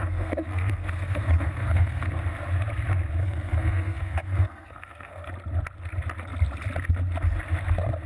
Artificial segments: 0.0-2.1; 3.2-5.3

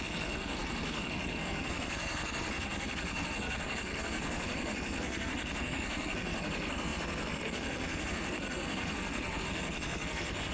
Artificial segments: 0.0-10.5

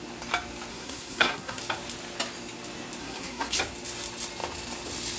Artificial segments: 0.7-1.6; 3.0-3.6

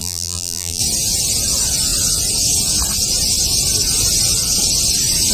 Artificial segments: 0.0-0.8

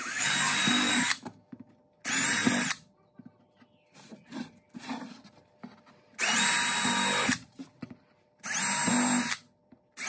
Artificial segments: 0.0-1.7

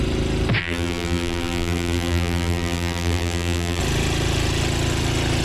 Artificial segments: 0.6-3.8